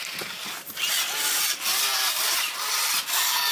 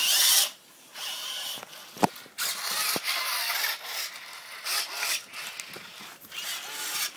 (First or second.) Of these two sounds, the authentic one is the second